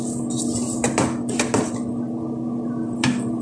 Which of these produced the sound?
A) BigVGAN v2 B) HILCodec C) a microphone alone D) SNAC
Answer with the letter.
C